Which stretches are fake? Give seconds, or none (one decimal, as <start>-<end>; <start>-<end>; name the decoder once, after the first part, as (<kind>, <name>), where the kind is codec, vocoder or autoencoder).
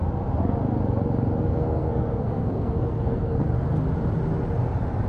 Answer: 1.5-3.4 (codec, SNAC)